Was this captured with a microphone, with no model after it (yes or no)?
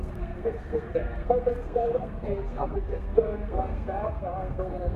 no